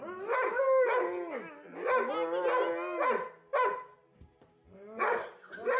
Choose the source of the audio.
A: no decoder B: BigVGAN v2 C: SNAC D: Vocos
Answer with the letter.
A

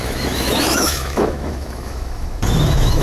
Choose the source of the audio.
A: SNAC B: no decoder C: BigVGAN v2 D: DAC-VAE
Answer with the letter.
D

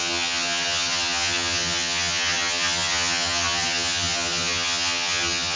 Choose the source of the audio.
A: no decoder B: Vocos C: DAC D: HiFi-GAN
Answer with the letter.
D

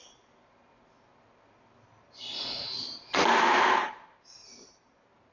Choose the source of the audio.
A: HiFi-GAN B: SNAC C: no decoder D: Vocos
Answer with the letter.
C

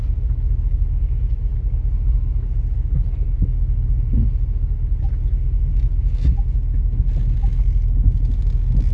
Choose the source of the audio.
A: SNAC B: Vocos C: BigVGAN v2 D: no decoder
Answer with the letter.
D